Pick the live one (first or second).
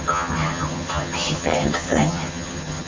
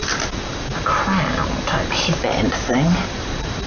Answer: second